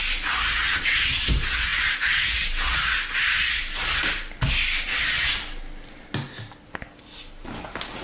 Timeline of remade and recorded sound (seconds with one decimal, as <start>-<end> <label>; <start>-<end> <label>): 0.0-8.0 recorded